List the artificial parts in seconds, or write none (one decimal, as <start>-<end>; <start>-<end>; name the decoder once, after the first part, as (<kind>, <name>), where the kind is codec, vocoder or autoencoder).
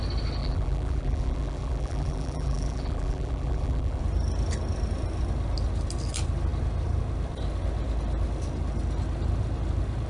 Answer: 0.4-4.0 (vocoder, BigVGAN v2)